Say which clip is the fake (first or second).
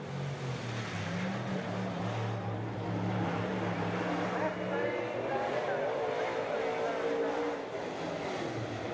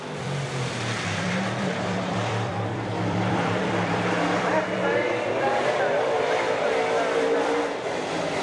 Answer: second